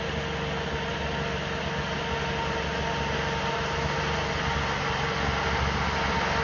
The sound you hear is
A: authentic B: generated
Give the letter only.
A